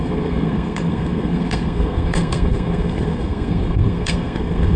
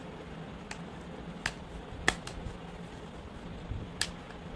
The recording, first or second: second